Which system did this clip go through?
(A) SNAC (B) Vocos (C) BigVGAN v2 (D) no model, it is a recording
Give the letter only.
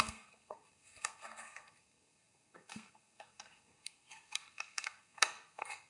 A